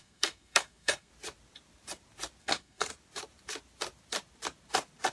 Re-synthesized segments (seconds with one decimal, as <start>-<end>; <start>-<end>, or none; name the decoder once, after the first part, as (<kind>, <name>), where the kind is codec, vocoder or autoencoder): 0.0-1.1 (codec, SNAC); 2.4-2.9